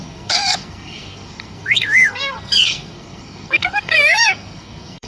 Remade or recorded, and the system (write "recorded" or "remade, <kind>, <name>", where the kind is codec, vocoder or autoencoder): remade, codec, SNAC